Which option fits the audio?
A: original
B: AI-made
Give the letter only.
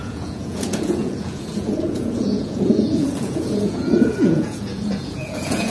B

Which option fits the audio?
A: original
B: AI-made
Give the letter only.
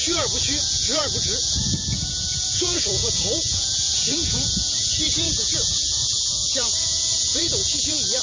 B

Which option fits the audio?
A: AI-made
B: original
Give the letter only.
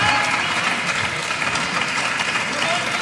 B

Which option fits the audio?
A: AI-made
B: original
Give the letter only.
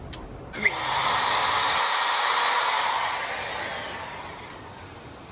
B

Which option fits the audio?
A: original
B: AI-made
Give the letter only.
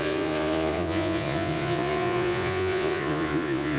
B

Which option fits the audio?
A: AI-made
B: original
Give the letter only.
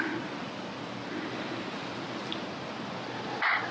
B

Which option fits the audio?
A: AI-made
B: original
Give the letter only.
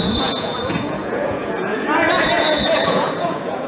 A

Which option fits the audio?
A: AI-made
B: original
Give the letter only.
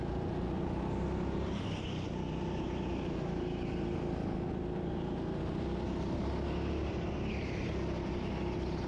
B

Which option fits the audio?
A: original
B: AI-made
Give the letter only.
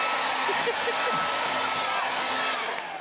A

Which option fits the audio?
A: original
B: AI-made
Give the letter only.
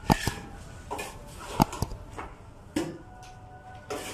A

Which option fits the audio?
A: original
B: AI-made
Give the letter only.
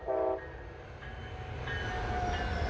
A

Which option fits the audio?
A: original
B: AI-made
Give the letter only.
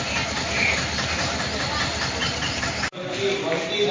A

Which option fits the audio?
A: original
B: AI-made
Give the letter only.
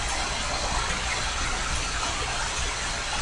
A